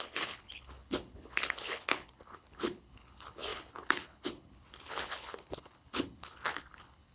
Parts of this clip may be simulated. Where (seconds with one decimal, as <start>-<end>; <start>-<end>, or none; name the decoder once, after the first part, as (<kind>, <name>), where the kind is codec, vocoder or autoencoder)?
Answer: 0.0-7.1 (codec, HILCodec)